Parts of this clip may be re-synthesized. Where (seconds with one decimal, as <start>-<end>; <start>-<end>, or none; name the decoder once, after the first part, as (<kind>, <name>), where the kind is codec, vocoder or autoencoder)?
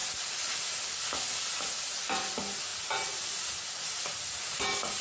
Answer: none